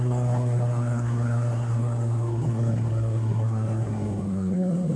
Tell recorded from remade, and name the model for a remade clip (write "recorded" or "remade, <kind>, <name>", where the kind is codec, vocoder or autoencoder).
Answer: remade, codec, SNAC